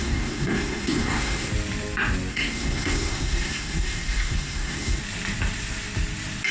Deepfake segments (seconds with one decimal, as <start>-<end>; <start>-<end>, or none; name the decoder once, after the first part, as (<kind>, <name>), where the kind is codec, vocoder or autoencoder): 0.0-1.5 (codec, SNAC); 2.3-5.0